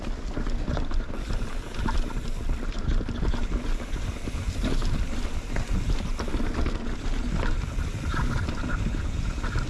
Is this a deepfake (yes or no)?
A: no